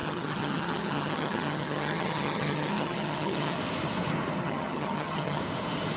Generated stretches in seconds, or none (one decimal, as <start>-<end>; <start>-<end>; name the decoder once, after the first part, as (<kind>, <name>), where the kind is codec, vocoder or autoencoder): 0.0-3.6 (vocoder, HiFi-GAN); 4.4-5.4